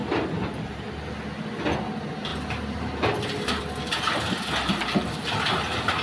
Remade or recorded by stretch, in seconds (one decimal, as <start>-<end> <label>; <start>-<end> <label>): 0.0-6.0 recorded